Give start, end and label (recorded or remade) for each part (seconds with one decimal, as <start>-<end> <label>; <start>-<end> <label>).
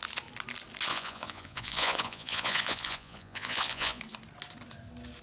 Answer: 0.0-0.9 recorded; 0.9-4.0 remade; 4.0-5.2 recorded